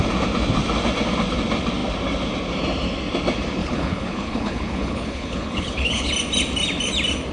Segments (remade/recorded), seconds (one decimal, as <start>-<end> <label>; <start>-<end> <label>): 0.0-3.6 recorded; 3.6-6.1 remade; 6.1-7.3 recorded